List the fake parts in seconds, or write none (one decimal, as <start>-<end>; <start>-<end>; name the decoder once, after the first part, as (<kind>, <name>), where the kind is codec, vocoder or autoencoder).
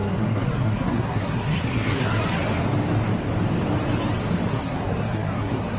0.0-2.1 (codec, SNAC); 4.5-5.8